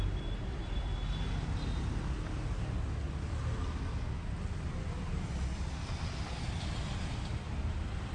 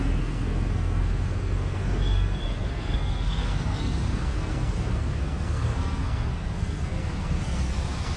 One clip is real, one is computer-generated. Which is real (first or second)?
first